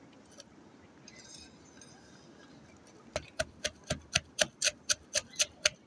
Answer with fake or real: real